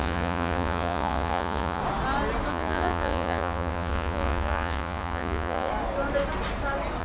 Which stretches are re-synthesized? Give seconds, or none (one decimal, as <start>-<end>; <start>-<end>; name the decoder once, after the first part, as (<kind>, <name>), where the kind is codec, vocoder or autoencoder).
0.0-1.8 (vocoder, Vocos); 2.5-5.7